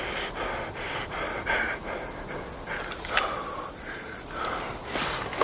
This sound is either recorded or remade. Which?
recorded